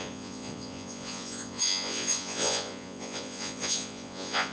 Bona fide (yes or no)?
no